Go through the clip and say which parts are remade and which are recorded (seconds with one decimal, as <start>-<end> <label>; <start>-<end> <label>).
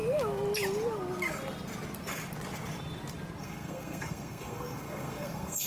0.0-3.4 recorded; 3.4-5.7 remade